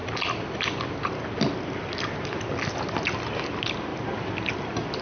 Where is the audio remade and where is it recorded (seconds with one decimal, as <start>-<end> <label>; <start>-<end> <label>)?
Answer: 0.0-5.0 recorded